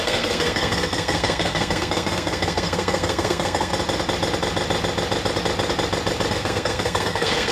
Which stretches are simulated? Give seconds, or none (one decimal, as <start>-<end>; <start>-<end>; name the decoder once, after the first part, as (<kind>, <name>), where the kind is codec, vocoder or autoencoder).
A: 0.0-3.7 (codec, SNAC); 6.3-7.5